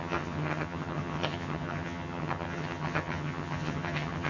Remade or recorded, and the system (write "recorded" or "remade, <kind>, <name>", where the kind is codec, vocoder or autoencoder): remade, vocoder, HiFi-GAN